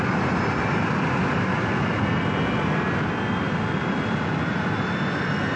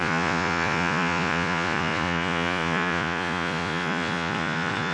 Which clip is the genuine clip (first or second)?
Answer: first